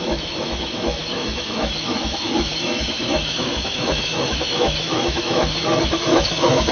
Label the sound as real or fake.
fake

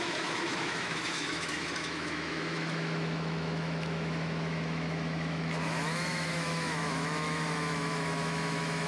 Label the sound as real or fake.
fake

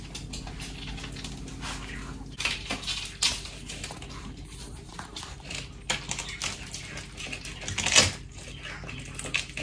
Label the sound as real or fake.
real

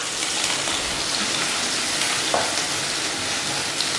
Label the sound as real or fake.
real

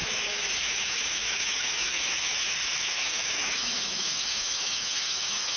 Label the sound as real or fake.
fake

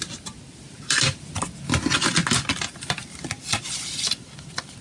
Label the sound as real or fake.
real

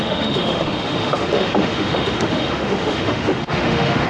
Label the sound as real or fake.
fake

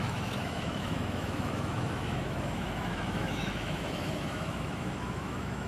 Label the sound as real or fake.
fake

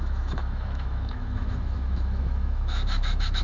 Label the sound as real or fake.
fake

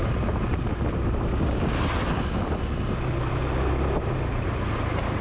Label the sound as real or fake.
real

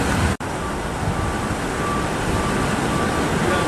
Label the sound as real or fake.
real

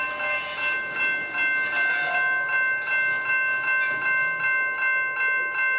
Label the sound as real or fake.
real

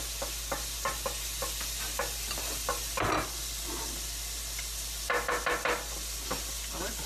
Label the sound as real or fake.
real